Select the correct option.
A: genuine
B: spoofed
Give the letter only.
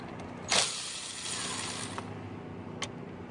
A